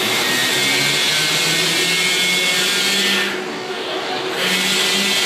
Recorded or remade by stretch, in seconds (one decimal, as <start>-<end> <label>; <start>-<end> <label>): 0.0-3.5 recorded; 3.5-4.1 remade; 4.1-5.3 recorded